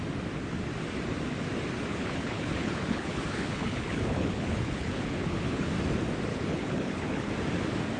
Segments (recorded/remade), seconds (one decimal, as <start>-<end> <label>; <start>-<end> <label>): 0.0-1.9 recorded; 1.9-5.7 remade; 5.7-6.3 recorded; 6.3-7.3 remade; 7.3-8.0 recorded